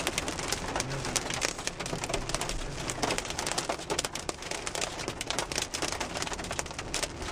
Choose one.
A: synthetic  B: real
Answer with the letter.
B